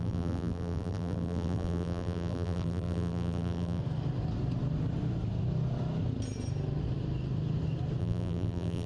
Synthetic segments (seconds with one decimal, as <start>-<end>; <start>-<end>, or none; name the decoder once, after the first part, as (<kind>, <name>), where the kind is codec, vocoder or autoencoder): 0.0-3.8 (vocoder, BigVGAN v2); 8.0-8.9